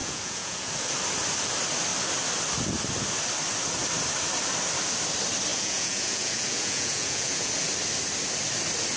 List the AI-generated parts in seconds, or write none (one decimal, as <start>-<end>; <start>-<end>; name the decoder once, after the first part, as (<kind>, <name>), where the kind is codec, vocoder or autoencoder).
0.0-0.7 (vocoder, Vocos); 5.5-7.5